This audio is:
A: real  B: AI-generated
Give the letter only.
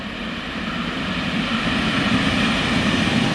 A